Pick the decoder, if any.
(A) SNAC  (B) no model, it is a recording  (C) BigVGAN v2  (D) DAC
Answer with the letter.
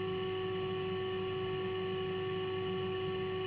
B